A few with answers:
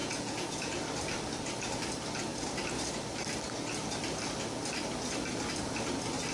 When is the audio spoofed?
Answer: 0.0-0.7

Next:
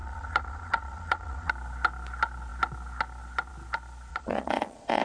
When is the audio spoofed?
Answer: 0.0-1.5; 4.1-5.0

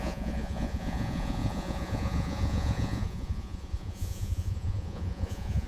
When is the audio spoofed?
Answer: 0.0-5.7

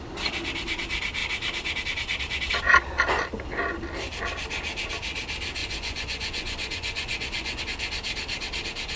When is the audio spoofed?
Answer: 5.6-7.6

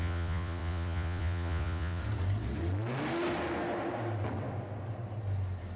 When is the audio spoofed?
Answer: 0.0-2.0

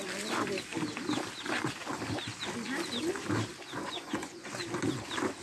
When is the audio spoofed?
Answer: 3.8-4.5

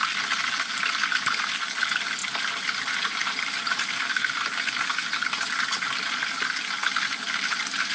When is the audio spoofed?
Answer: none